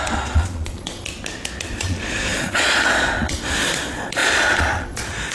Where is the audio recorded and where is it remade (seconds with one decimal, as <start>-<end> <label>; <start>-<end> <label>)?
0.0-1.1 remade; 1.1-1.6 recorded; 1.6-5.3 remade